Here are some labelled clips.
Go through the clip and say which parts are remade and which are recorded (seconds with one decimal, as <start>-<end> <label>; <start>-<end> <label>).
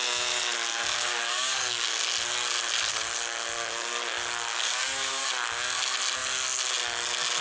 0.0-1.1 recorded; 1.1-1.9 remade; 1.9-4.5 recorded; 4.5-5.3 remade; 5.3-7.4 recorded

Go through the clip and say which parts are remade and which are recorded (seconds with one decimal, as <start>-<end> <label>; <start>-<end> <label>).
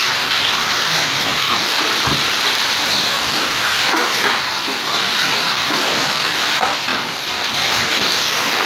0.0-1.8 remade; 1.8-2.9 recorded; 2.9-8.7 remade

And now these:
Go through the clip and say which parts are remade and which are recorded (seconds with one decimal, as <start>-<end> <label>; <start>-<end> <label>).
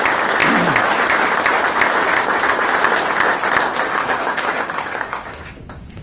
0.0-3.9 recorded; 3.9-6.0 remade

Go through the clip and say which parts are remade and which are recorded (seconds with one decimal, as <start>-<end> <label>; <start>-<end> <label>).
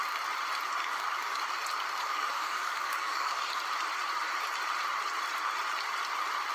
0.0-0.8 recorded; 0.8-1.4 remade; 1.4-2.0 recorded; 2.0-3.4 remade; 3.4-6.5 recorded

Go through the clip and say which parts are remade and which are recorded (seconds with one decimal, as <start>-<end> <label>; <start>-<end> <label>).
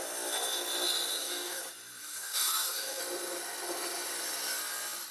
0.0-1.1 recorded; 1.1-1.6 remade; 1.6-2.0 recorded; 2.0-3.0 remade; 3.0-5.1 recorded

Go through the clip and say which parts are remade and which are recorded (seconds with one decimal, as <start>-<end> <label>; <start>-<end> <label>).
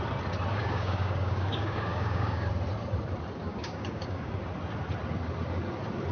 0.0-0.5 recorded; 0.5-2.5 remade; 2.5-3.5 recorded; 3.5-4.3 remade; 4.3-6.1 recorded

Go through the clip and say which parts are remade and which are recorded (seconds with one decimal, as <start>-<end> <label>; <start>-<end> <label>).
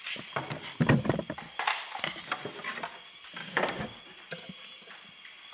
0.0-3.4 recorded; 3.4-4.0 remade; 4.0-5.5 recorded